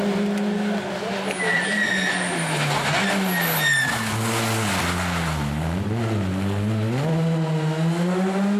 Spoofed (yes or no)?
no